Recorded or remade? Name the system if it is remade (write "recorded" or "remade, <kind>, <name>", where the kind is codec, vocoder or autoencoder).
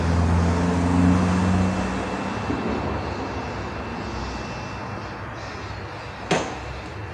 recorded